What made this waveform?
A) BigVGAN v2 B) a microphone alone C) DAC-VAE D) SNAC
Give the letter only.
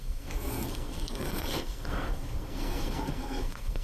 D